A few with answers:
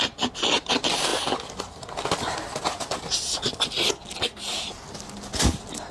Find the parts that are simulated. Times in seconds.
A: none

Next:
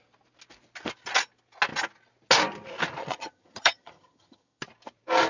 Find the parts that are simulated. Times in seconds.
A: 3.0-4.6

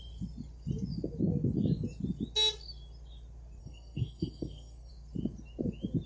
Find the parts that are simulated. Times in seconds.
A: 3.6-4.9

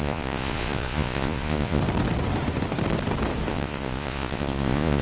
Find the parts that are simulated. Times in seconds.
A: 0.0-1.8; 3.5-5.0

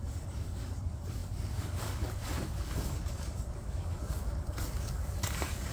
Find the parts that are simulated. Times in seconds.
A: 0.0-5.7

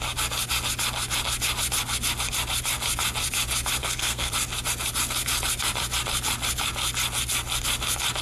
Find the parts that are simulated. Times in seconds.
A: 3.8-4.3